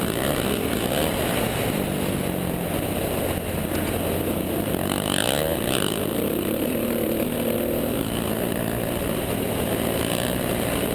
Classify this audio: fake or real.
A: real